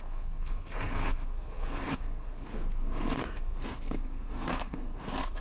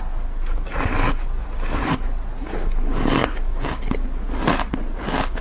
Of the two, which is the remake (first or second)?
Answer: first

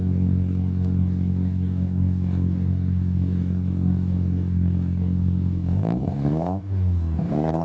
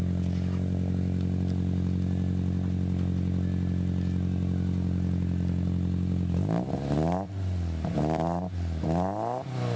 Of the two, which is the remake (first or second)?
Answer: first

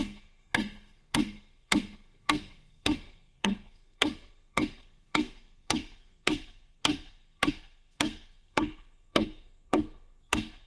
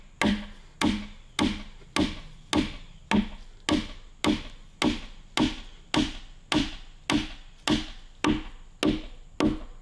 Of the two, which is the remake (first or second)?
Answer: first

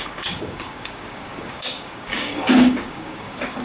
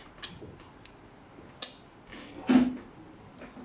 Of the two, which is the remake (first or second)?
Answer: first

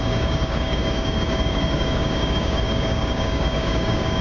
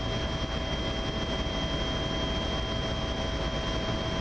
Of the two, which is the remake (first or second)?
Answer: first